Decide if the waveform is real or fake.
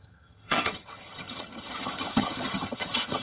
fake